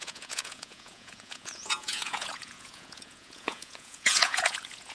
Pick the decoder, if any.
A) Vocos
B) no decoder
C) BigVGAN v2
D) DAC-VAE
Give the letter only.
A